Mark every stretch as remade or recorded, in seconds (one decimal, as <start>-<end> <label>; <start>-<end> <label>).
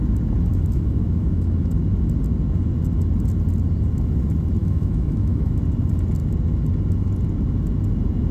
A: 0.0-0.5 recorded; 0.5-1.8 remade; 1.8-4.6 recorded; 4.6-5.6 remade; 5.6-8.3 recorded